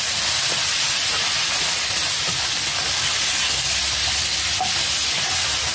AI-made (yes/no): no